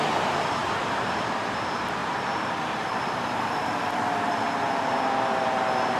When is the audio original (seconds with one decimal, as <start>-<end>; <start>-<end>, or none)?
none

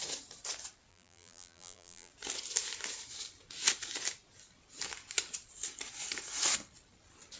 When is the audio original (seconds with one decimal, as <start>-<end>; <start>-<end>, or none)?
0.0-0.9; 2.1-7.4

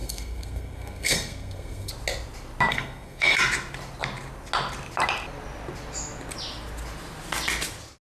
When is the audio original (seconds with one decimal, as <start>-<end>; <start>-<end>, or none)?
1.9-2.7; 3.4-8.1

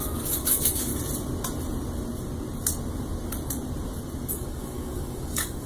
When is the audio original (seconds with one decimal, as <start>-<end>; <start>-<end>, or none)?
0.9-4.3

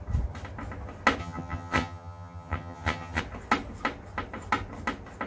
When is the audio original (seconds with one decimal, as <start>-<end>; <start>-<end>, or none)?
0.0-1.2; 3.2-5.3